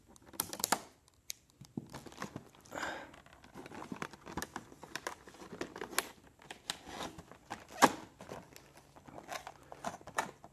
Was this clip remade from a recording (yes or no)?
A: no